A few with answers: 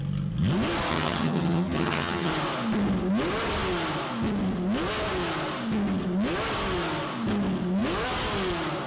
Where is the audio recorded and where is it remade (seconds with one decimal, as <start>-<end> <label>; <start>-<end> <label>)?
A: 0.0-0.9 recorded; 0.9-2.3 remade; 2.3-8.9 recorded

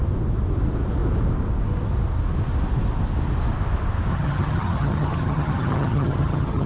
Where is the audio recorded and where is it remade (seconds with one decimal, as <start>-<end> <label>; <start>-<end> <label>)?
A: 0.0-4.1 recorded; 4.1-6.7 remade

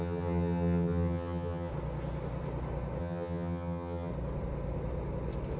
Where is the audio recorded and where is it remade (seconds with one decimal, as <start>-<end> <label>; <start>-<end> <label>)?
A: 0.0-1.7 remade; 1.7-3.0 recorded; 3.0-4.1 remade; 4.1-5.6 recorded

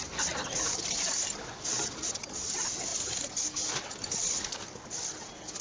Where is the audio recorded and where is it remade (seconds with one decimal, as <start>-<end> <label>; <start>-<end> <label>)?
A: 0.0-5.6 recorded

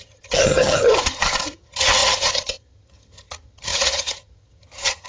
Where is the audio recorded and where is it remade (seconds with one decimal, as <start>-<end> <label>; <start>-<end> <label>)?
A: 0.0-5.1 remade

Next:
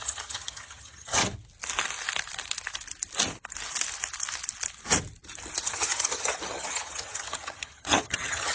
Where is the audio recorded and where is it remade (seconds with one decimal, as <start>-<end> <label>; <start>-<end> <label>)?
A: 0.0-1.2 remade; 1.2-5.6 recorded; 5.6-8.5 remade